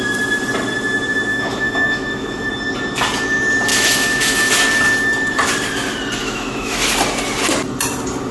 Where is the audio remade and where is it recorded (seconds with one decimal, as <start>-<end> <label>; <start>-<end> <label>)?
0.0-1.3 recorded; 1.3-2.5 remade; 2.5-3.7 recorded; 3.7-4.5 remade; 4.5-6.2 recorded; 6.2-6.9 remade; 6.9-8.3 recorded